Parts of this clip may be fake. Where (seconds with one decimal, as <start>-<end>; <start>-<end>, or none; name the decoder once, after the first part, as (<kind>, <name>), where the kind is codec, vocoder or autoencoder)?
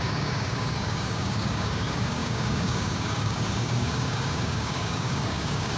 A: 0.0-5.8 (codec, DAC)